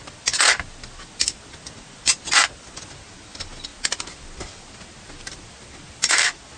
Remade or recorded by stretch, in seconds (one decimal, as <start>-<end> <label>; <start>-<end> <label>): 0.0-6.6 recorded